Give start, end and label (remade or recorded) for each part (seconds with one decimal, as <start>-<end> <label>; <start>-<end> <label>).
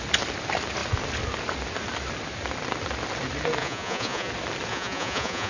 0.0-3.6 recorded; 3.6-4.3 remade; 4.3-4.7 recorded; 4.7-5.5 remade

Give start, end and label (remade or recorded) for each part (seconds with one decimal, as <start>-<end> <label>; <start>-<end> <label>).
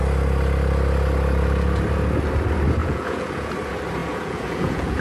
0.0-2.8 recorded; 2.8-3.5 remade; 3.5-4.0 recorded; 4.0-5.0 remade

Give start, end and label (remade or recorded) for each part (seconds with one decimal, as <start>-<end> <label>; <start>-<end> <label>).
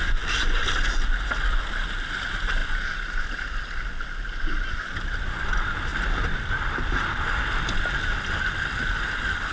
0.0-9.5 recorded